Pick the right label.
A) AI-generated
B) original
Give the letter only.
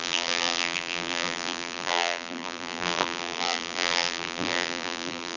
A